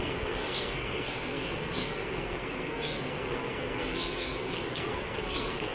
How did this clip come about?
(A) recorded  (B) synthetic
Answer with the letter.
B